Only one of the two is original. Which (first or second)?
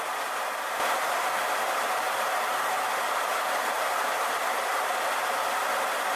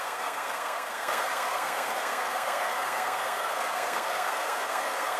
first